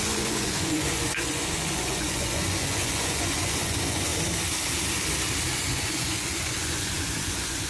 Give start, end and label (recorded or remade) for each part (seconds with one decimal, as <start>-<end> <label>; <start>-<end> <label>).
0.0-4.1 remade; 4.1-5.5 recorded; 5.5-7.7 remade